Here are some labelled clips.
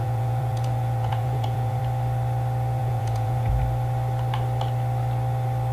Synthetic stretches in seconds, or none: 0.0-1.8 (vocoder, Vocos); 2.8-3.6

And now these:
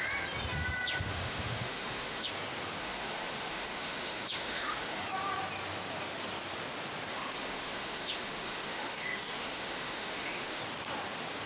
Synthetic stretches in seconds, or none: 1.1-2.3 (autoencoder, DAC-VAE); 2.8-5.0; 7.1-10.6

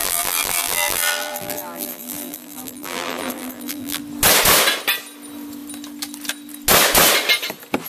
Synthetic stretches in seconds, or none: 0.0-4.0 (vocoder, BigVGAN v2)

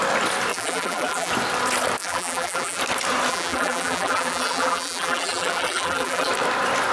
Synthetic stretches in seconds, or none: 0.5-1.3 (vocoder, BigVGAN v2); 2.0-2.8; 3.3-6.3

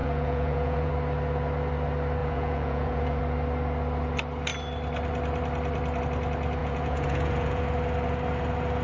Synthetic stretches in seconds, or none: 0.0-0.9 (vocoder, Vocos); 2.2-3.2; 6.6-7.6

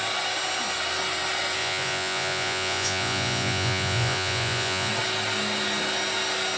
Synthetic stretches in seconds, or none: 1.6-4.9 (vocoder, Vocos)

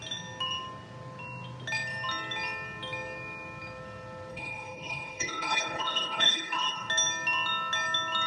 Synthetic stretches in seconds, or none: 4.3-6.9 (codec, HILCodec)